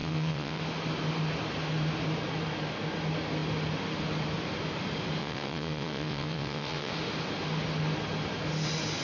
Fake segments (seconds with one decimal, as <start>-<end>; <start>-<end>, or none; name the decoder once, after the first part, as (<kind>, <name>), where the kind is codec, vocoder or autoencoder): 0.0-0.6 (vocoder, WaveNeXt); 5.2-6.9